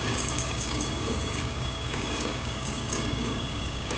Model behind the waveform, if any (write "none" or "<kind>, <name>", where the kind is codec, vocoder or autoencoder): codec, DAC